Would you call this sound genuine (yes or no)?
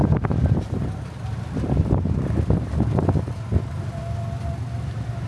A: yes